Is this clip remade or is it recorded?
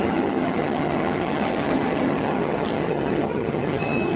remade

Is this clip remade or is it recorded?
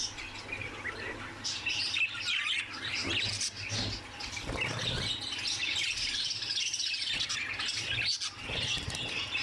recorded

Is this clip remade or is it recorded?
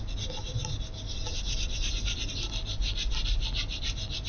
recorded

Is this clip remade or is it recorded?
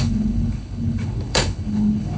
remade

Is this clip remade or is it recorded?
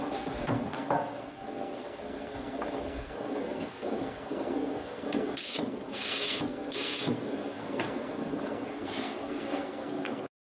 remade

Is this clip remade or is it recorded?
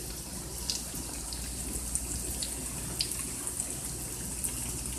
recorded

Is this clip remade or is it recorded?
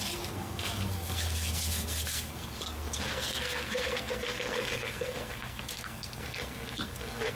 remade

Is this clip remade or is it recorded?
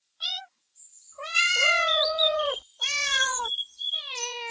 remade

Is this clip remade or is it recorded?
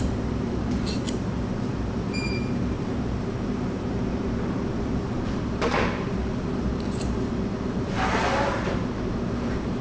remade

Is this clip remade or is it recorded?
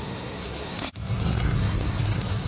remade